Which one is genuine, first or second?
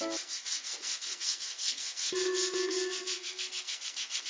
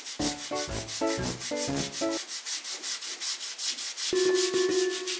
second